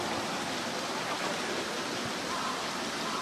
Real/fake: real